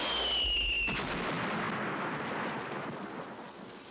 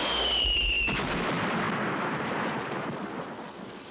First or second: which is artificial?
second